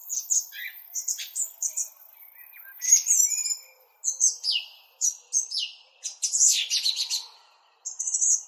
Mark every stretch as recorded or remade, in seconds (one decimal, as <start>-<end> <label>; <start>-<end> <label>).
0.0-8.5 recorded